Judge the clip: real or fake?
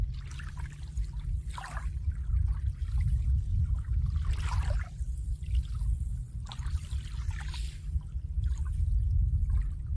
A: real